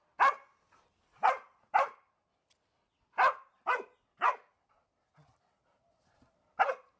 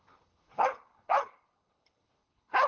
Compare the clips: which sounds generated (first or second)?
second